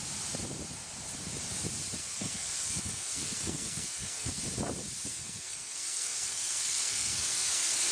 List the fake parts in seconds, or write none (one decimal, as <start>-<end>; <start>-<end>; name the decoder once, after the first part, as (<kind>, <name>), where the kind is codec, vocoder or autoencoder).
2.0-4.4 (codec, SNAC); 5.1-7.9